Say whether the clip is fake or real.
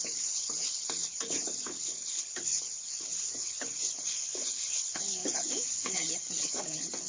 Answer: fake